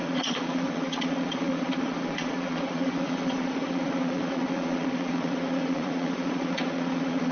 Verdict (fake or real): fake